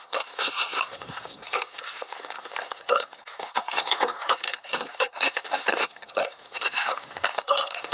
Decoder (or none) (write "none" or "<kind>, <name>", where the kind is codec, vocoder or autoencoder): codec, SNAC